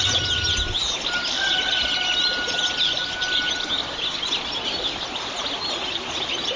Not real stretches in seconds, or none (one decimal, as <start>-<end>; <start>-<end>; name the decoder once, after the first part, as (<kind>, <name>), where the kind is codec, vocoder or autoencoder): none